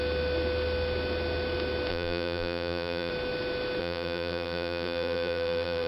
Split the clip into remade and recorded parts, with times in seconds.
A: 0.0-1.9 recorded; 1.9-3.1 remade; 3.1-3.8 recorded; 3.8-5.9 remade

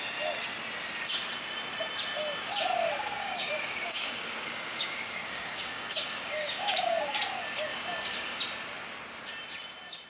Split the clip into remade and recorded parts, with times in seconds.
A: 0.0-3.2 recorded; 3.2-7.2 remade; 7.2-7.7 recorded; 7.7-8.4 remade; 8.4-10.1 recorded